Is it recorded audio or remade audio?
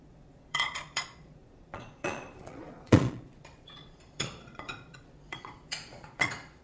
remade